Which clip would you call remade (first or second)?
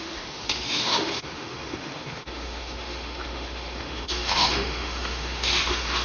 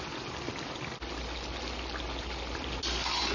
first